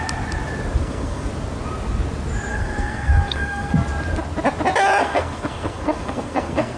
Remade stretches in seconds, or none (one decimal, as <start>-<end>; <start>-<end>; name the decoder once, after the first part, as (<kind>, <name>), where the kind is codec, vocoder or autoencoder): 0.8-1.3 (codec, SNAC); 2.5-3.7; 5.0-6.8